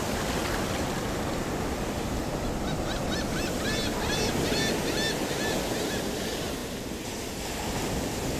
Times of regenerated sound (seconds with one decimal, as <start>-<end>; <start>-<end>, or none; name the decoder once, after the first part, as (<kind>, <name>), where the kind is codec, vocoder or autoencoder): 0.0-0.4 (vocoder, BigVGAN v2); 1.3-6.6; 7.9-8.4